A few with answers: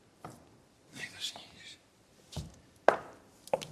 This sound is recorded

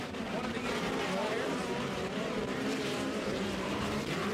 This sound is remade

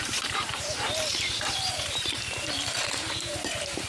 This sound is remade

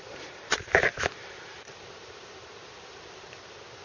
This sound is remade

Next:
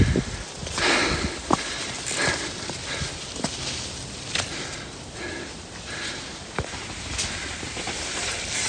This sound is recorded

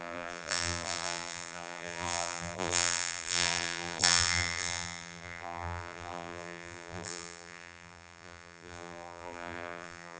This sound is remade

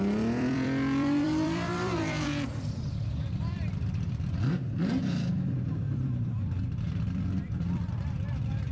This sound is remade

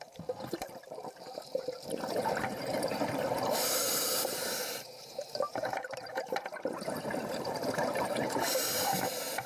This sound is remade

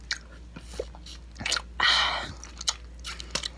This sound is recorded